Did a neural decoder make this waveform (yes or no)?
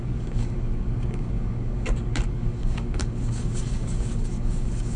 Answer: yes